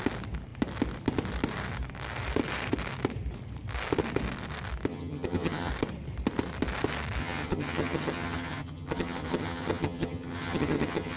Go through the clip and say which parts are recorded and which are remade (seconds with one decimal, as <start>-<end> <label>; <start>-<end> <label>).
0.0-4.9 recorded; 4.9-5.7 remade; 5.7-7.2 recorded; 7.2-11.2 remade